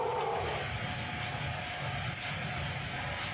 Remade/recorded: recorded